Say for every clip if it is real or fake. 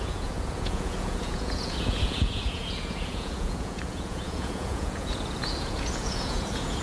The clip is fake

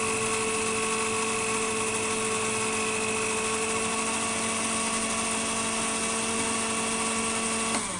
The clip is real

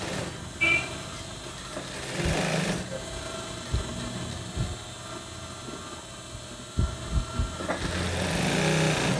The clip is real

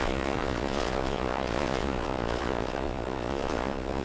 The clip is fake